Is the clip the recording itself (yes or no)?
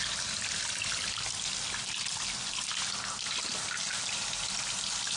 yes